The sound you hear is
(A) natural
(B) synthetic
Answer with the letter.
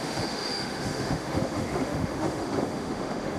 B